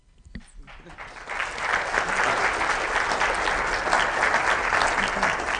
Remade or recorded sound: recorded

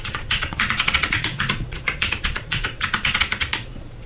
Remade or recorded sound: remade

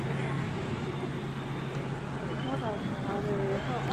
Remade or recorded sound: recorded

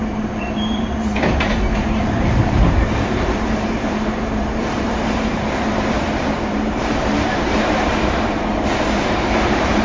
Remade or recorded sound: remade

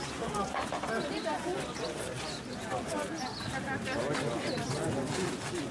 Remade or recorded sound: recorded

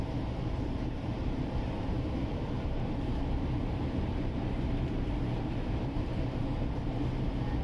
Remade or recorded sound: remade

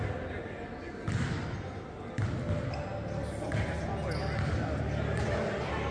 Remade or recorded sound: recorded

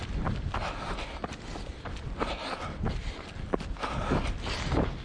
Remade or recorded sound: recorded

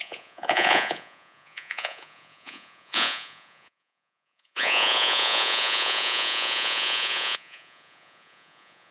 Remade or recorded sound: remade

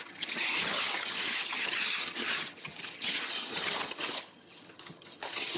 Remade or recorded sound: remade